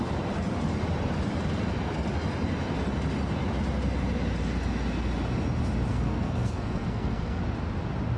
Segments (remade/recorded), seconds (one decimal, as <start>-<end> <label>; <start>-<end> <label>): 0.0-5.9 recorded; 5.9-7.4 remade; 7.4-8.2 recorded